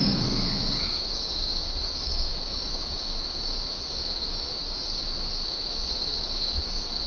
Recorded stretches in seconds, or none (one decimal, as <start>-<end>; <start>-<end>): none